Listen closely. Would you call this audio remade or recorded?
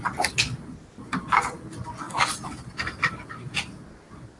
recorded